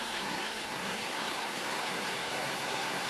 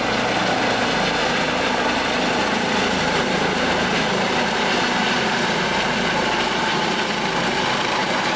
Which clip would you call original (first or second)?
second